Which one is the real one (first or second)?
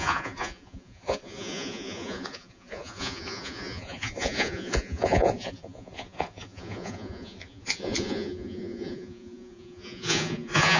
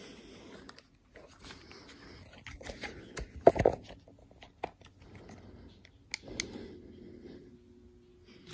second